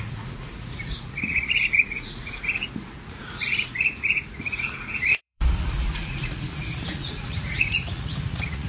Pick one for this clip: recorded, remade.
remade